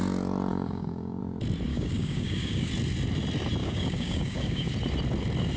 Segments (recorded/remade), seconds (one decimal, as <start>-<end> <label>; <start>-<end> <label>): 0.0-0.5 recorded; 0.5-1.2 remade; 1.2-1.7 recorded; 1.7-2.7 remade; 2.7-3.6 recorded; 3.6-4.7 remade; 4.7-5.6 recorded